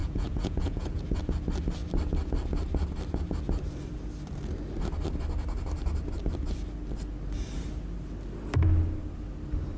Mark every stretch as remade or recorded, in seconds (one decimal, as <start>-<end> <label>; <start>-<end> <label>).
0.0-1.2 remade; 1.2-9.8 recorded